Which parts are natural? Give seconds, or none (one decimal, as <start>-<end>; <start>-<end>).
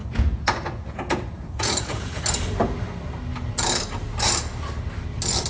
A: 2.2-5.5